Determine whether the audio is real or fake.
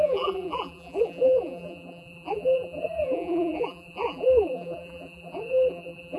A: fake